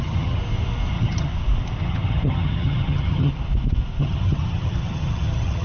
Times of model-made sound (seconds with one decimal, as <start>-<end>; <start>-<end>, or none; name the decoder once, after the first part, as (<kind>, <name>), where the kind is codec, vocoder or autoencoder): 0.0-0.4 (vocoder, HiFi-GAN); 0.9-1.3; 1.8-3.3; 4.0-5.6